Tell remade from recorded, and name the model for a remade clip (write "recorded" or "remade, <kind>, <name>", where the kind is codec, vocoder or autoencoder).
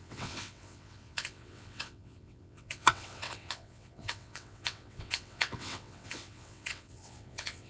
remade, vocoder, WaveNeXt